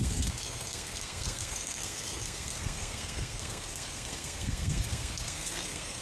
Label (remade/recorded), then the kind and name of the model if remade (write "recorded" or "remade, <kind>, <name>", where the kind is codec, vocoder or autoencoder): remade, codec, SNAC